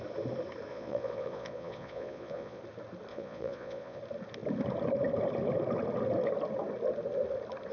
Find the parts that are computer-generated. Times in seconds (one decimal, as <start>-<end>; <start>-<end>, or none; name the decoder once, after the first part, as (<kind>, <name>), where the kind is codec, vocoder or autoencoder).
0.7-2.6 (vocoder, Vocos); 3.1-4.0